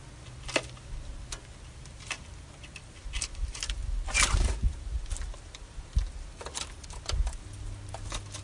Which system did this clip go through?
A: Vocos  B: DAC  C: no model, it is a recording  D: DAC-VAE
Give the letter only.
C